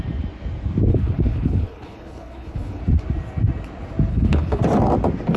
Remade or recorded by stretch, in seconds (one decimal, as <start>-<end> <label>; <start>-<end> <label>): 0.0-0.9 recorded; 0.9-2.8 remade; 2.8-4.1 recorded; 4.1-4.6 remade; 4.6-5.4 recorded